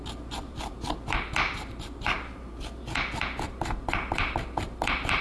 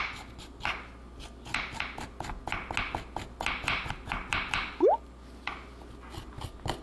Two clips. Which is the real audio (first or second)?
second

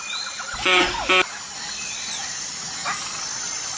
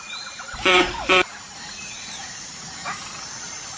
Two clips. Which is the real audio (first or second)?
first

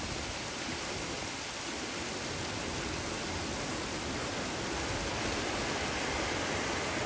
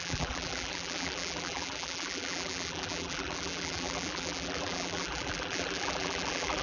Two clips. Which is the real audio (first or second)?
first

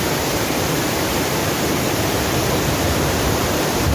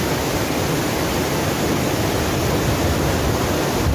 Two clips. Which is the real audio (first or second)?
second